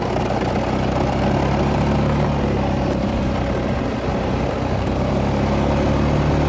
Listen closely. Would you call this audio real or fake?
real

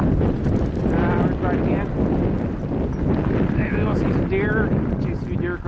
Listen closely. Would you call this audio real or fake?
real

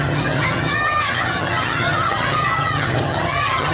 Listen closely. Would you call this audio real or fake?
fake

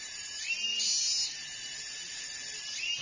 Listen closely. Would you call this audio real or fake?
real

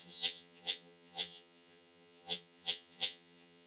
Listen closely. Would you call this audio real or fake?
fake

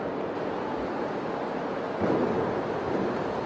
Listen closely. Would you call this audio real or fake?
real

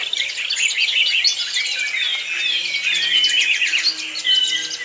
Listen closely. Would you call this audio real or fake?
real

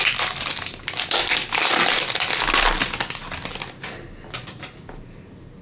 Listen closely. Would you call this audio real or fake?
real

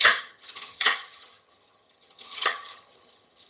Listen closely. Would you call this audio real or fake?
fake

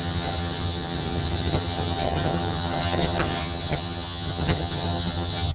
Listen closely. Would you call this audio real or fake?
fake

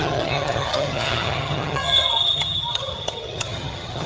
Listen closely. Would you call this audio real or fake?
fake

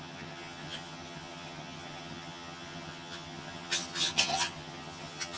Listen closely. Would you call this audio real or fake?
fake